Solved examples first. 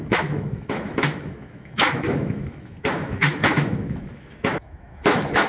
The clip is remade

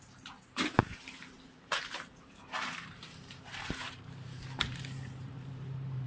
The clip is remade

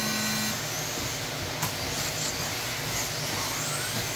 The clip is recorded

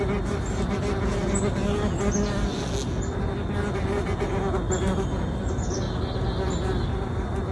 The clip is recorded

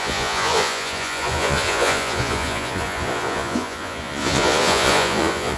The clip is remade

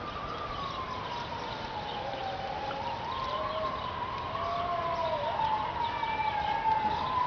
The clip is recorded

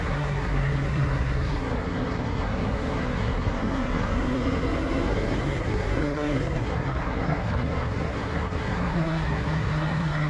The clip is remade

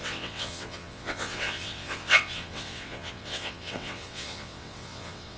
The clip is remade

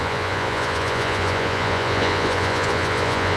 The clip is remade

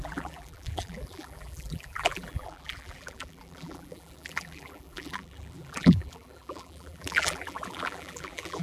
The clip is remade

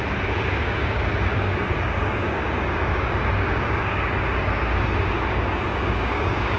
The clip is remade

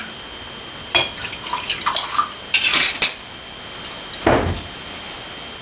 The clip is recorded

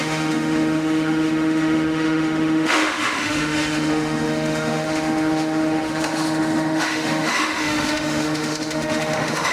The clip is remade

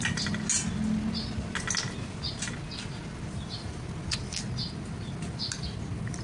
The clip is recorded